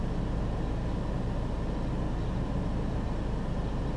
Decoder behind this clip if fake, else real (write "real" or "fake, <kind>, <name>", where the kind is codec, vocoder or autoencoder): real